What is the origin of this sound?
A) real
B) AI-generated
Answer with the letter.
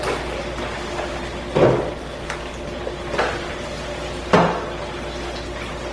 A